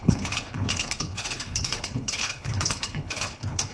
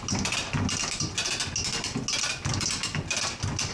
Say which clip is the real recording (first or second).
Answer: second